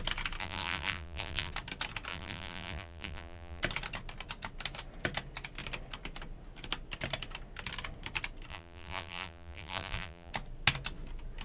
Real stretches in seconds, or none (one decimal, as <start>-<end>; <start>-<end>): 0.0-0.4; 1.5-2.1; 3.6-8.5; 10.3-11.4

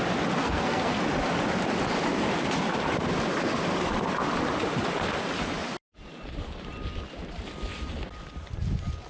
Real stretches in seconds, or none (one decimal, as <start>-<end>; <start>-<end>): 0.0-0.4; 1.0-9.1

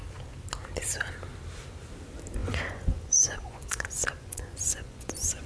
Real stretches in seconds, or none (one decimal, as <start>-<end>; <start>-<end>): 0.0-2.4

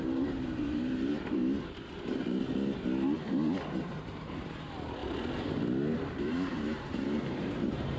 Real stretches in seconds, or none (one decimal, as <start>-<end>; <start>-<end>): 1.4-2.1; 2.5-3.8; 5.0-6.2

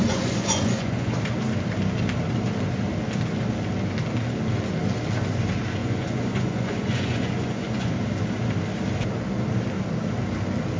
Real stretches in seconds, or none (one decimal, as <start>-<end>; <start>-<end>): 1.1-5.8; 7.9-10.8

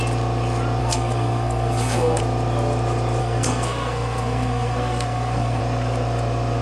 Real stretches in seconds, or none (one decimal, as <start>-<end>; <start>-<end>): 0.0-0.8; 2.2-3.2; 5.6-6.6